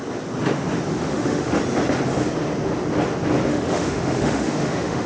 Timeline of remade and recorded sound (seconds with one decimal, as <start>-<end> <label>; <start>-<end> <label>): 0.0-0.9 recorded; 0.9-1.6 remade; 1.6-3.5 recorded; 3.5-5.1 remade